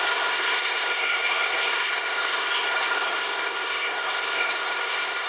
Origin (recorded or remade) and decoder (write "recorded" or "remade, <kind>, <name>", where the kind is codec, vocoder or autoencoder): remade, codec, SNAC